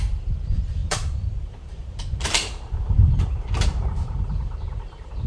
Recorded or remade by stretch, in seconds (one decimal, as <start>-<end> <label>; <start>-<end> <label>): 0.0-5.3 remade